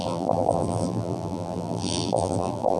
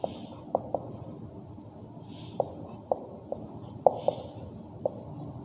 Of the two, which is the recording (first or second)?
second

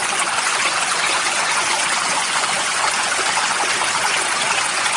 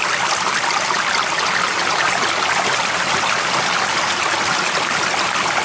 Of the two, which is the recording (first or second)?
second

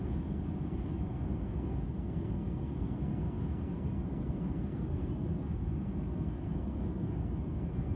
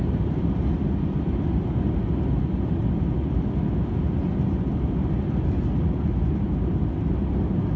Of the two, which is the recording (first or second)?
second